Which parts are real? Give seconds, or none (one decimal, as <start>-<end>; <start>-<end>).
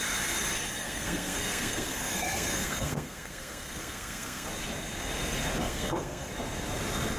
0.0-0.8; 4.5-5.6; 6.3-7.2